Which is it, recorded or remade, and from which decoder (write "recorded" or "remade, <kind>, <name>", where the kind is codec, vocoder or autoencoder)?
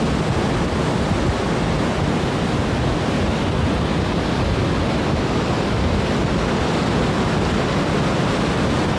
recorded